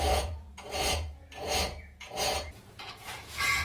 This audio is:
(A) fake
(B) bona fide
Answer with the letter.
A